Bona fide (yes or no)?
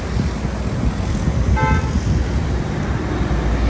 yes